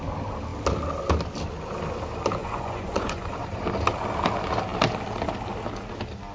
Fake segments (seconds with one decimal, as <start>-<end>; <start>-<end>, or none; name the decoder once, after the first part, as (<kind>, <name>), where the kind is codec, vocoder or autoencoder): 2.4-3.3 (vocoder, Vocos)